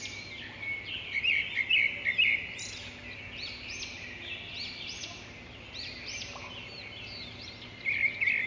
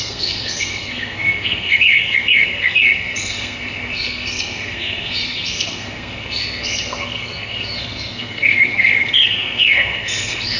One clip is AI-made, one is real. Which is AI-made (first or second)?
second